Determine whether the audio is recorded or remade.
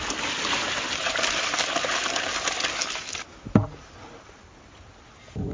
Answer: recorded